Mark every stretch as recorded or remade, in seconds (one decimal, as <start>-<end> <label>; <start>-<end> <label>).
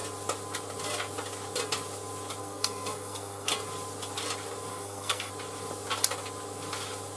0.0-2.4 recorded; 2.4-3.5 remade; 3.5-4.7 recorded; 4.7-5.3 remade; 5.3-7.2 recorded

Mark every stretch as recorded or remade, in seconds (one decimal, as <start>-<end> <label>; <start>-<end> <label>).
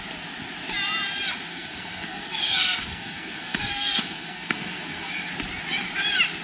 0.0-1.5 recorded; 1.5-5.3 remade; 5.3-6.4 recorded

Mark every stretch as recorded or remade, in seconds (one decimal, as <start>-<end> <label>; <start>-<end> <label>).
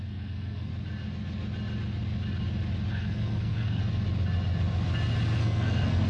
0.0-0.7 remade; 0.7-2.9 recorded; 2.9-3.8 remade; 3.8-5.4 recorded; 5.4-6.1 remade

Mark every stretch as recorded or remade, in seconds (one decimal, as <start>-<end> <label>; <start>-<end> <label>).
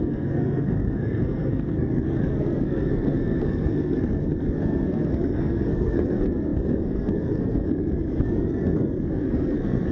0.0-9.9 remade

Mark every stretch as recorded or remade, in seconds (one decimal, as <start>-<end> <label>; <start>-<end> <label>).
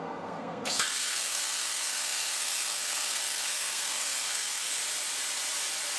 0.0-4.8 remade; 4.8-6.0 recorded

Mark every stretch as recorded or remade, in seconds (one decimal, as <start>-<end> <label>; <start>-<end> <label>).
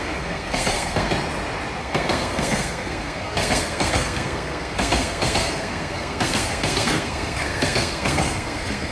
0.0-1.1 remade; 1.1-1.8 recorded; 1.8-8.9 remade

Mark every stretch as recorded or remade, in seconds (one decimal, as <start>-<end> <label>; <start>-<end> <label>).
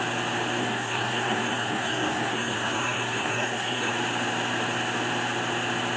0.0-0.6 recorded; 0.6-3.9 remade; 3.9-6.0 recorded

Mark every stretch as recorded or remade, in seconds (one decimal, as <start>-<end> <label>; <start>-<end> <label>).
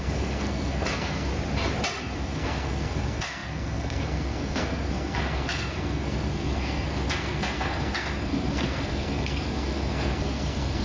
0.0-1.3 remade; 1.3-2.0 recorded; 2.0-10.8 remade